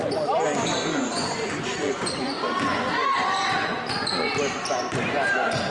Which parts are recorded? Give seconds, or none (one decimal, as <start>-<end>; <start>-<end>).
0.0-0.9; 4.3-5.7